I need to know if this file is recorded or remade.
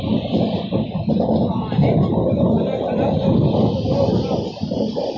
recorded